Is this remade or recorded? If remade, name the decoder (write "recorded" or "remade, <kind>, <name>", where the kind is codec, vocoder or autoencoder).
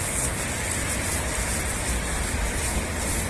recorded